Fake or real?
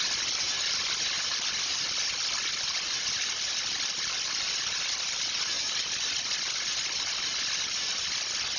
real